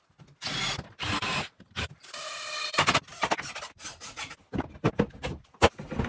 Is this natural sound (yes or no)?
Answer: yes